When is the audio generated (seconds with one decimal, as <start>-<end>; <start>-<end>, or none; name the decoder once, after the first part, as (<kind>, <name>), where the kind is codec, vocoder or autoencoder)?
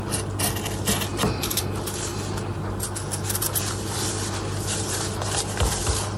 1.1-1.6 (vocoder, BigVGAN v2)